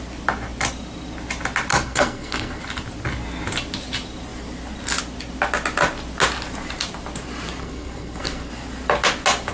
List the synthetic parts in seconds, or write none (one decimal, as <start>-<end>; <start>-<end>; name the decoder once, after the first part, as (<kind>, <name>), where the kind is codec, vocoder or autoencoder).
1.7-2.6 (codec, SNAC); 7.6-8.5

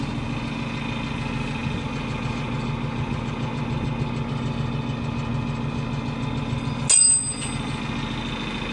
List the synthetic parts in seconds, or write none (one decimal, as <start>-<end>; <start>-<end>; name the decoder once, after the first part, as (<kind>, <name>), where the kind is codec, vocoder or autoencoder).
none